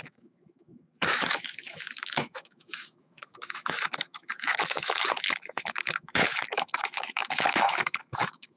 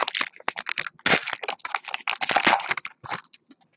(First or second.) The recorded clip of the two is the second